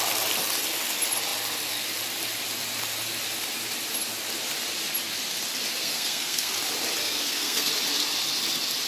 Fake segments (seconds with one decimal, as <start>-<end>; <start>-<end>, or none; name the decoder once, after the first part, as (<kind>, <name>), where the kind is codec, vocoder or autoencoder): 5.8-6.5 (codec, SNAC); 7.0-7.7